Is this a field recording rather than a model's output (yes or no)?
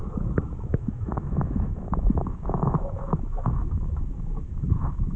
no